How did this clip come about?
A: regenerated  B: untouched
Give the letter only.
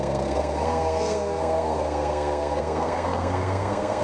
A